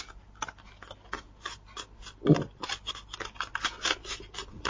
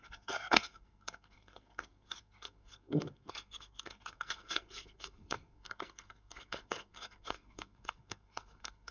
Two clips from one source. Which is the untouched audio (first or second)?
first